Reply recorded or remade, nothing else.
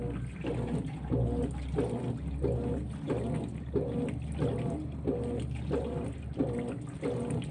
recorded